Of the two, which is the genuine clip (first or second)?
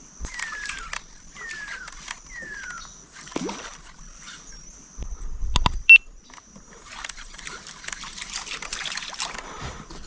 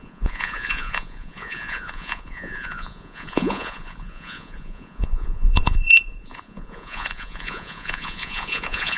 first